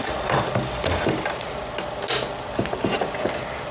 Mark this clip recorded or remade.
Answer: recorded